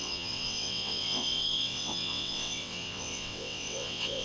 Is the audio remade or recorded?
remade